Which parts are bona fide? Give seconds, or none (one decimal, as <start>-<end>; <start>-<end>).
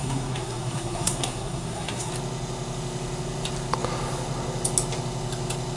2.1-5.8